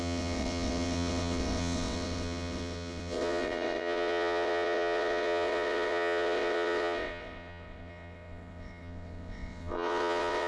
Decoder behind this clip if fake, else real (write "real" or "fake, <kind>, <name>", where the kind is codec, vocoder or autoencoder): fake, vocoder, WaveNeXt